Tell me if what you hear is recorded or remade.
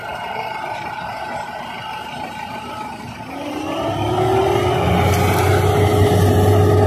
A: recorded